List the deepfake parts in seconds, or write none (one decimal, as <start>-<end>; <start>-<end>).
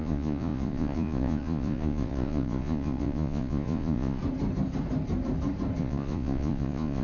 0.0-4.2; 5.8-7.0